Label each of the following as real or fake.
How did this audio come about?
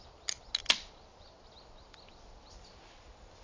real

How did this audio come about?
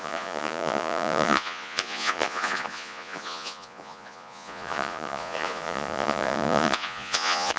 fake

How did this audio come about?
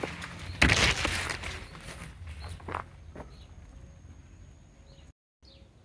real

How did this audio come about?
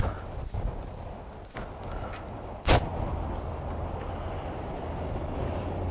real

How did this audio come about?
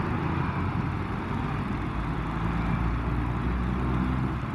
real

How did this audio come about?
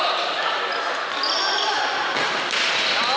real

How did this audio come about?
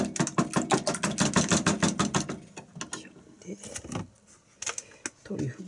real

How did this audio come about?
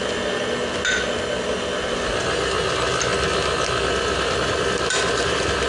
real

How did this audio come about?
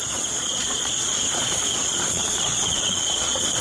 fake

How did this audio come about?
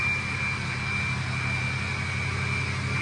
real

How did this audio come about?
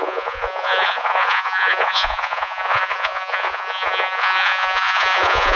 fake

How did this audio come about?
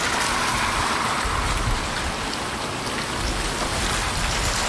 real